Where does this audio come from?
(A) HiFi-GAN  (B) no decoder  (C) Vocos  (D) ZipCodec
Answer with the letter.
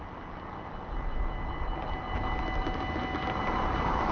B